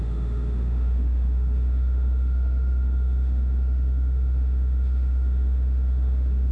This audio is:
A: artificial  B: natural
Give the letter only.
A